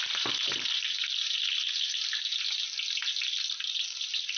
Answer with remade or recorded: recorded